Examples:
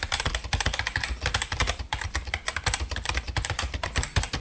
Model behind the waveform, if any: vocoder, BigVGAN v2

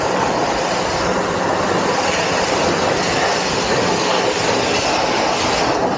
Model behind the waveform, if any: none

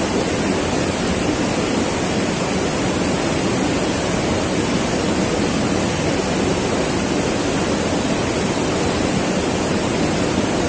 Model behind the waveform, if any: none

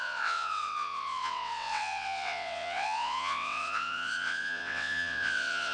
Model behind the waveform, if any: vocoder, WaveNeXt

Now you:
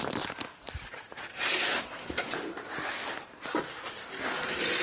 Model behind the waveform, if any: none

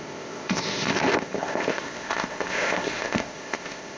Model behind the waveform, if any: codec, ZipCodec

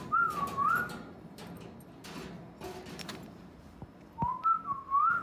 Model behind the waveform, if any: none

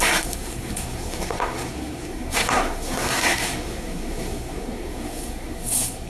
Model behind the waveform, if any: codec, SNAC